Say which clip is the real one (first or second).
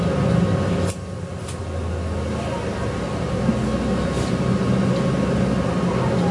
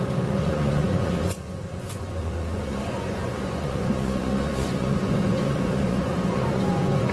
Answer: first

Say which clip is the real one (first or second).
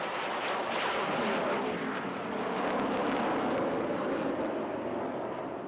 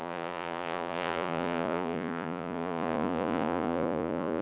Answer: first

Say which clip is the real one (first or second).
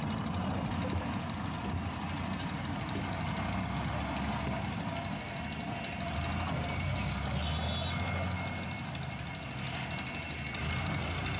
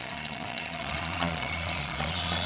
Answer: first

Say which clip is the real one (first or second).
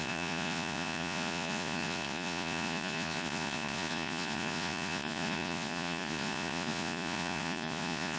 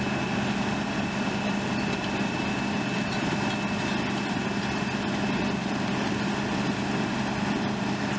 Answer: second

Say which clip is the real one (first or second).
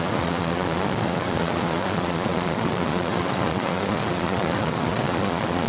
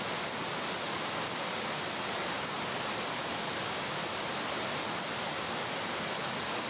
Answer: second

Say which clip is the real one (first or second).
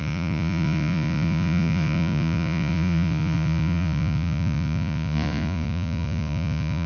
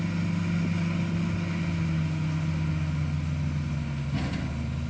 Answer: second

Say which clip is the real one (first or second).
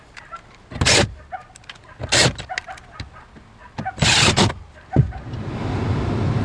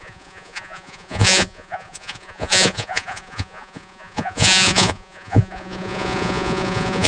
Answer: first